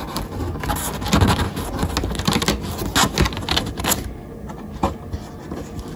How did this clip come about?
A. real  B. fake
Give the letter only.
A